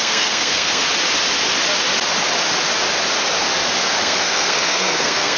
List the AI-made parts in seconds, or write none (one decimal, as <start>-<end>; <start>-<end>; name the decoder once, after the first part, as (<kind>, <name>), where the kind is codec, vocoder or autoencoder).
0.0-0.8 (codec, SNAC); 4.0-5.4